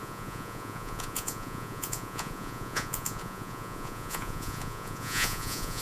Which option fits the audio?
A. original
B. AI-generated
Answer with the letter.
B